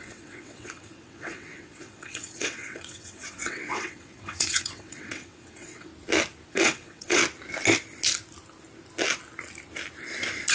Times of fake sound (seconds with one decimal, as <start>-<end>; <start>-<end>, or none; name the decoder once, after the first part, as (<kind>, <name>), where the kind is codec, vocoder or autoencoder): 0.0-5.9 (vocoder, WaveNeXt); 6.5-7.2